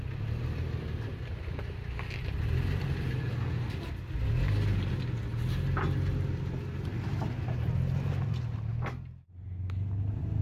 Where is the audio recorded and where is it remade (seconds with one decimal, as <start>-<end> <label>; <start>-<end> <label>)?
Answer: 0.0-10.4 recorded